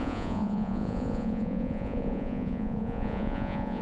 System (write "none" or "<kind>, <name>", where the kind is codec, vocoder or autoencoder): vocoder, Vocos